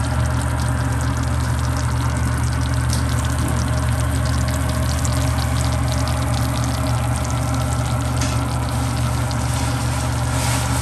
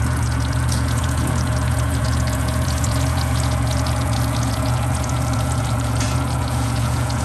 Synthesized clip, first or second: second